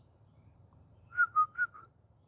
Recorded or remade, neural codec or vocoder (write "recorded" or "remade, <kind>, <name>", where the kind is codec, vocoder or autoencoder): remade, vocoder, BigVGAN v2